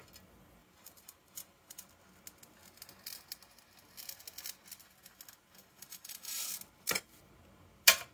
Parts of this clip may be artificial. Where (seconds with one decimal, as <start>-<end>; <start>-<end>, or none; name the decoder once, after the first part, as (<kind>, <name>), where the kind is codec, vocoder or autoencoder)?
0.6-1.9 (vocoder, BigVGAN v2); 5.6-6.5